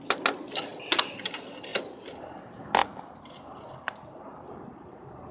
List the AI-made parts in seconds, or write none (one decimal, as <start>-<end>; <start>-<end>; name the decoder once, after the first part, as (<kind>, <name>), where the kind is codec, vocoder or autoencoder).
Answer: none